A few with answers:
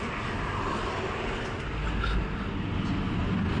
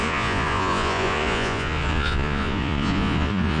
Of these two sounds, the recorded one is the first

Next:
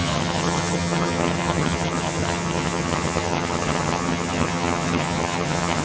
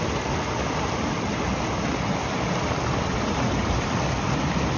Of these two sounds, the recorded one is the second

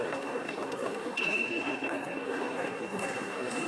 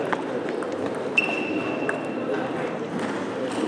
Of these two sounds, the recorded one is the second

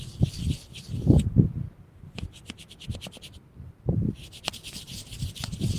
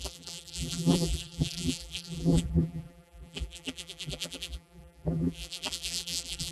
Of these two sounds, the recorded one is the first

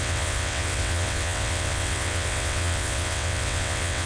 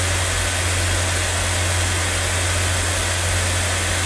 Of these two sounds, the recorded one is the second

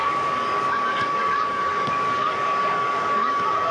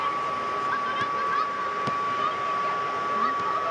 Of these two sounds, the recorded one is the second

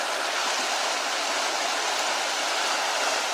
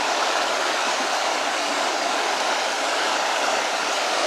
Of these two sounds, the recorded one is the first